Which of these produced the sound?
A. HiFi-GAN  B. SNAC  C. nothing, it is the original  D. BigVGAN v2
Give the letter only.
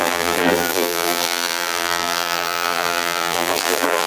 D